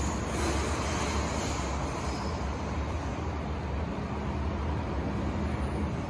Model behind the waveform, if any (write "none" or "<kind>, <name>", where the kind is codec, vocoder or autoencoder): none